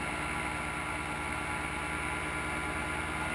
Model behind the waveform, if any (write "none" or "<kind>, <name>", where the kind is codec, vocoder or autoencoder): none